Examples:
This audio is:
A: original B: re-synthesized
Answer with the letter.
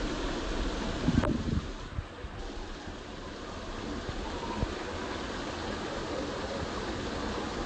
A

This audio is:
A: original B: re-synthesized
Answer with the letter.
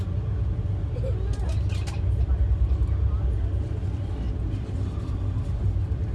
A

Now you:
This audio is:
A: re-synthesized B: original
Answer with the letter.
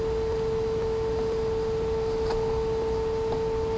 B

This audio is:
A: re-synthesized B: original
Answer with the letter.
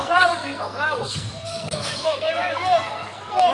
A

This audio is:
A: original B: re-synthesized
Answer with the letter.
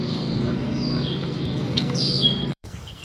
B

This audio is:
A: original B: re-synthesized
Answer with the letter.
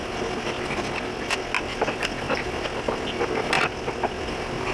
A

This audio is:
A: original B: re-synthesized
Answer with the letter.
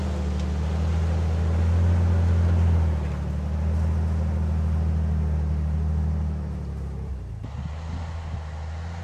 A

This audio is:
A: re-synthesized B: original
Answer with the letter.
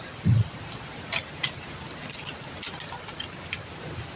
B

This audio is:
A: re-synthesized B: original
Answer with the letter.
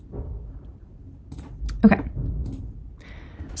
B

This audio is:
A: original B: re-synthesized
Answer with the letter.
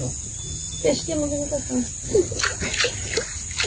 A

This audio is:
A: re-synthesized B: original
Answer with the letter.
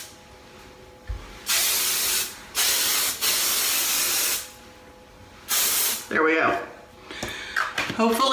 B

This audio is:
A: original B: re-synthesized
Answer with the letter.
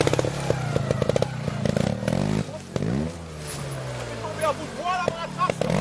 A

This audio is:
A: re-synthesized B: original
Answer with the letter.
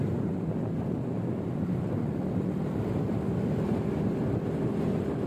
B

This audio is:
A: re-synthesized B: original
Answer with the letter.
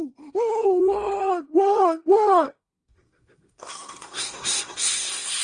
A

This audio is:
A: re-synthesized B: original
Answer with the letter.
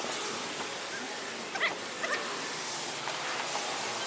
B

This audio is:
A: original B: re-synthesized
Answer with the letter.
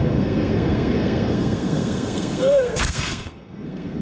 B